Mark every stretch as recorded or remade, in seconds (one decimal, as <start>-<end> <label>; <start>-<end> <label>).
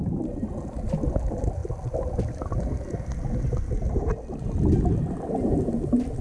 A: 0.0-6.2 recorded